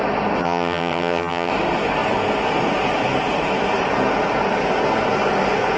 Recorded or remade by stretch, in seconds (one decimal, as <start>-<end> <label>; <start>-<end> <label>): 0.0-0.4 recorded; 0.4-1.5 remade; 1.5-5.8 recorded